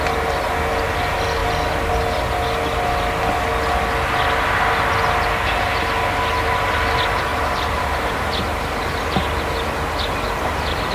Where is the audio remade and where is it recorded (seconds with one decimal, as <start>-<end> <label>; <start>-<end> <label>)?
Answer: 0.0-10.9 recorded